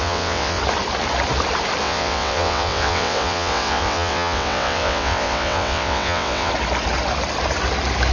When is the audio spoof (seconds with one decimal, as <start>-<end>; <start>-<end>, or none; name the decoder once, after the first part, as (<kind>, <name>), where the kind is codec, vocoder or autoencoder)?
0.0-0.6 (vocoder, WaveNeXt); 1.8-6.5